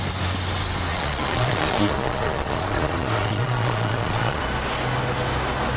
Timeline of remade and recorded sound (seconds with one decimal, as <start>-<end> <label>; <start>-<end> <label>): 0.0-0.9 recorded; 0.9-4.4 remade; 4.4-5.8 recorded